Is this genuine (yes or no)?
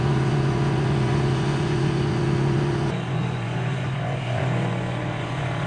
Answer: no